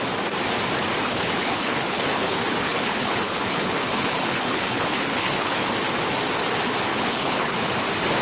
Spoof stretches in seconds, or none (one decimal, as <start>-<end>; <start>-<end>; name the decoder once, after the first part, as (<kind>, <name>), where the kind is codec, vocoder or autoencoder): 1.0-5.7 (codec, HILCodec); 6.9-7.7